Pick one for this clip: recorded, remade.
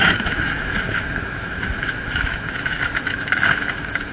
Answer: remade